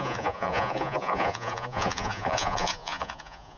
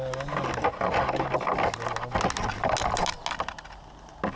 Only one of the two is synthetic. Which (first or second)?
first